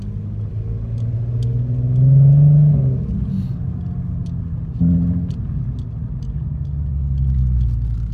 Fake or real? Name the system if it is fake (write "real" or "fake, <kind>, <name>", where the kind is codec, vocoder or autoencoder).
real